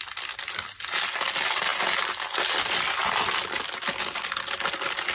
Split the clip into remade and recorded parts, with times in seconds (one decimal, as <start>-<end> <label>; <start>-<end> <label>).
0.0-5.1 recorded